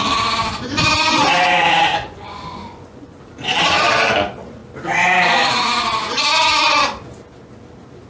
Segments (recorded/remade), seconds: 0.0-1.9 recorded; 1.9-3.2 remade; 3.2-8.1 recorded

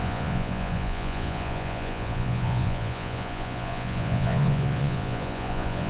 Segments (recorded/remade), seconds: 0.0-5.9 remade

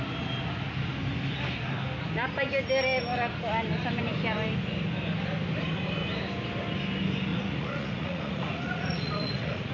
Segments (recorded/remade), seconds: 0.0-7.3 recorded; 7.3-9.7 remade

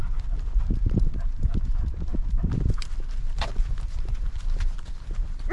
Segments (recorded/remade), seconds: 0.0-5.5 recorded

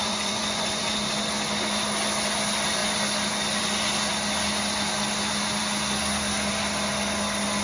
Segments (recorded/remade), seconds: 0.0-0.8 remade; 0.8-7.6 recorded

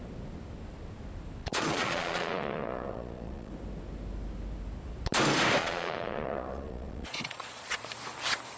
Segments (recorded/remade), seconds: 0.0-1.4 recorded; 1.4-3.5 remade; 3.5-5.6 recorded; 5.6-7.9 remade; 7.9-8.6 recorded